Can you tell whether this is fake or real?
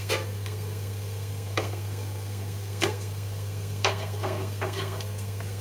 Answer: fake